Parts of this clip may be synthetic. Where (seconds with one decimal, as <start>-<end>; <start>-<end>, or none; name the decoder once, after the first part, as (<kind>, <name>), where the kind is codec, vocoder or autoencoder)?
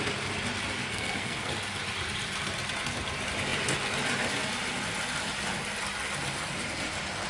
0.8-1.5 (codec, SNAC)